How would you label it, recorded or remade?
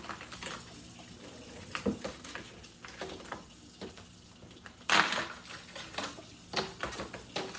recorded